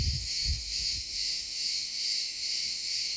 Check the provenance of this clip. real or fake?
fake